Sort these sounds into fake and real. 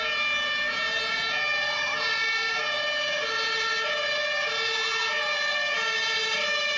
real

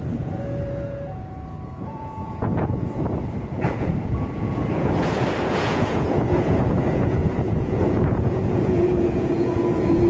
fake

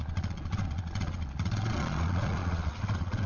fake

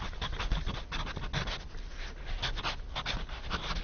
real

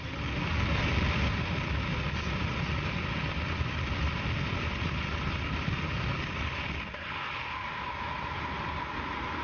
real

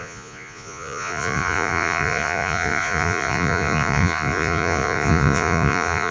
fake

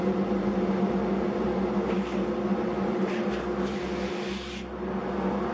real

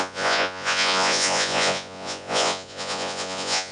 fake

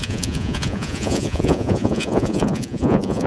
fake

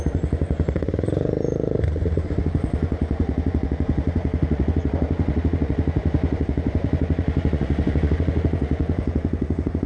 fake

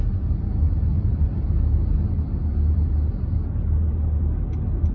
real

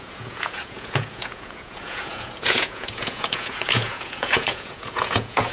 fake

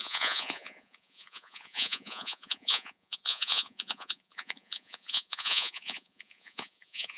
fake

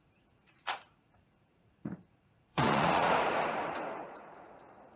fake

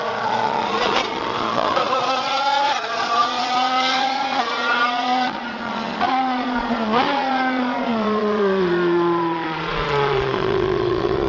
fake